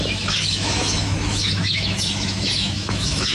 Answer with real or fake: fake